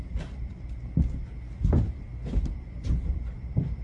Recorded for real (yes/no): yes